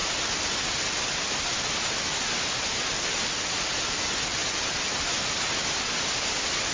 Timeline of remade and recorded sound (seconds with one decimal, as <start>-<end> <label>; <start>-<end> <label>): 0.0-6.7 recorded